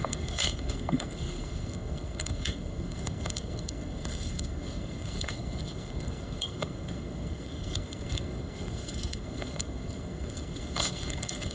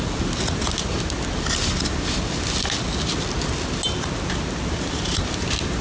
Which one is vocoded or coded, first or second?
first